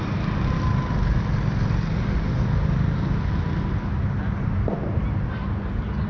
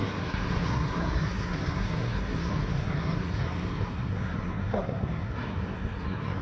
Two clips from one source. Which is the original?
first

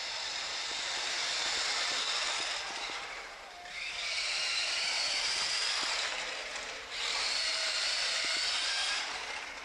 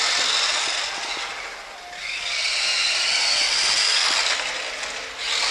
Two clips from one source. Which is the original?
second